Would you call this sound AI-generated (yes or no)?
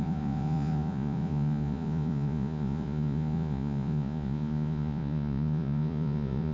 yes